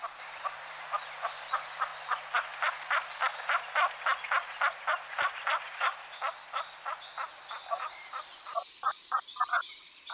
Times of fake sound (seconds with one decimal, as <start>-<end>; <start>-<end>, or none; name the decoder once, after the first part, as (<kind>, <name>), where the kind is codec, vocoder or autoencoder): 0.0-1.9 (vocoder, BigVGAN v2); 4.7-5.9; 7.7-10.1

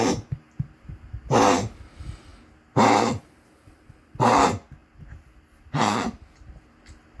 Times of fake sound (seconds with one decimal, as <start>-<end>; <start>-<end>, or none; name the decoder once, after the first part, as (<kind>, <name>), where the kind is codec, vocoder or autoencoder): 4.8-6.5 (vocoder, BigVGAN v2)